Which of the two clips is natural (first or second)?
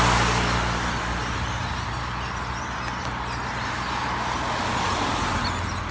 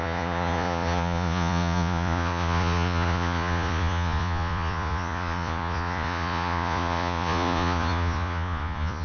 first